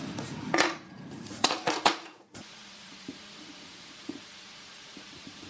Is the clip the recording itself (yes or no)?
no